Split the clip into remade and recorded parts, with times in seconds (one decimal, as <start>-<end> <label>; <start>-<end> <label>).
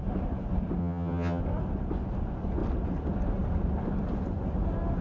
0.0-0.8 recorded; 0.8-1.4 remade; 1.4-5.0 recorded